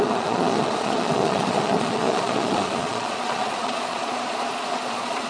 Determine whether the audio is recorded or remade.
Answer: remade